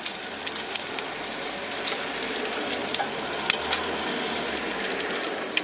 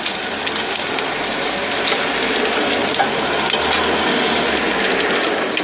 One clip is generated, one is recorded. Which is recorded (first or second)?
second